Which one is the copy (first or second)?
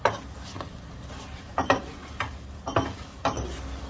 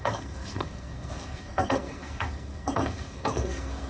second